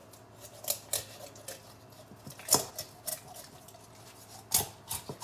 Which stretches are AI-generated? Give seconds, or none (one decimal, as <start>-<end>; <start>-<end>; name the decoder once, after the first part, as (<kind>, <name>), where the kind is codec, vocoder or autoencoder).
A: none